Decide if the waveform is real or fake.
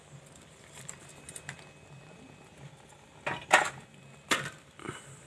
real